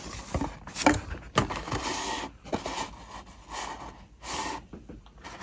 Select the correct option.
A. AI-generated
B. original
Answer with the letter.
B